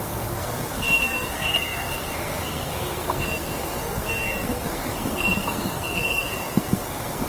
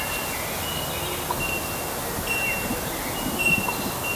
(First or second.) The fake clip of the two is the first